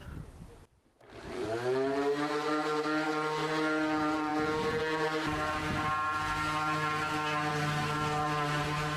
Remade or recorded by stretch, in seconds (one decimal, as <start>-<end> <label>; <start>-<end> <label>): 0.0-9.0 recorded